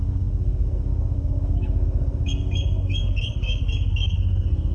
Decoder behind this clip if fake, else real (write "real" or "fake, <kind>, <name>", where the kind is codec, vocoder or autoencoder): fake, codec, SNAC